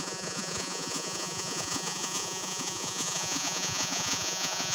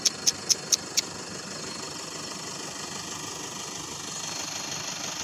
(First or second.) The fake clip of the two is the first